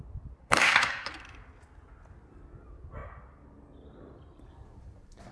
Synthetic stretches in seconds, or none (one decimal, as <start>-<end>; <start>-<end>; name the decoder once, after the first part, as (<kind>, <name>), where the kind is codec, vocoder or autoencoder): 0.4-1.1 (codec, SNAC)